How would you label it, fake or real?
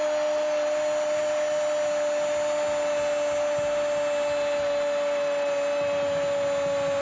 real